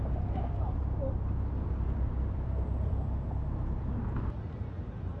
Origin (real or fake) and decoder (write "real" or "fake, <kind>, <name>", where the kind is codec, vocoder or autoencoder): real